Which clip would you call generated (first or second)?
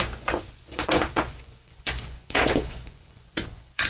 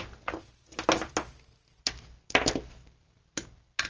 first